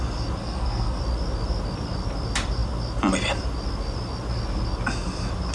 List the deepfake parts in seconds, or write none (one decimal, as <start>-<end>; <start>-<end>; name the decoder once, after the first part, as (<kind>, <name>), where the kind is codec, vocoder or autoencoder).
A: 0.4-1.0 (codec, SNAC)